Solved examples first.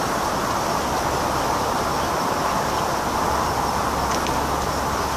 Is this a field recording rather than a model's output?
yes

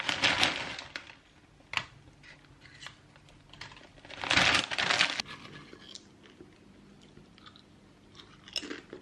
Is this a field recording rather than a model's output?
yes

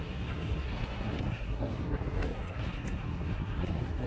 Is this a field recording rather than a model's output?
no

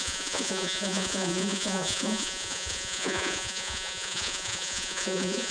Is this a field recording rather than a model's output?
no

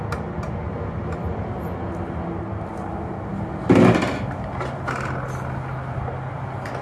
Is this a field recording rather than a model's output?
yes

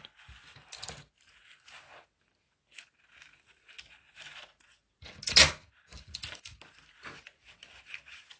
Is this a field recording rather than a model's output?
yes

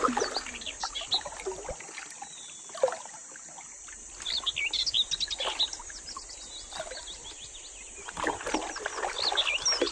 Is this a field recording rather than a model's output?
yes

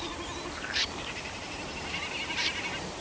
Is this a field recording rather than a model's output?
yes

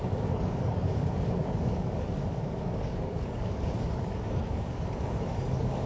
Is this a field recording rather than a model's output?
no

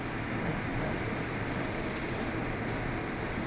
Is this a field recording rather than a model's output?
no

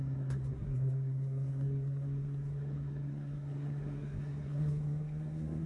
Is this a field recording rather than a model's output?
no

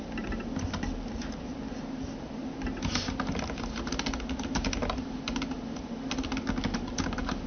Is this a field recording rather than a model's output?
yes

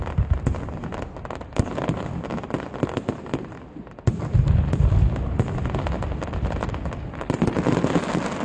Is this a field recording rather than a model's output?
yes